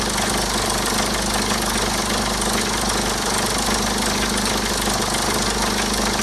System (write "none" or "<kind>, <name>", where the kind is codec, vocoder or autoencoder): none